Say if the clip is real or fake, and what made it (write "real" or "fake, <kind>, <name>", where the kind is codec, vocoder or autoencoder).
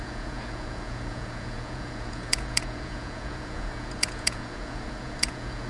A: fake, vocoder, Vocos